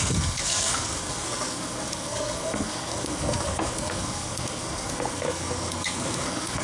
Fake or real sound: fake